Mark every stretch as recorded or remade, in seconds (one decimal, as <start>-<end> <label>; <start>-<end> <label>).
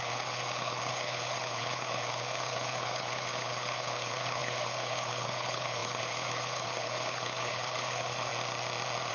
0.0-8.3 remade; 8.3-9.1 recorded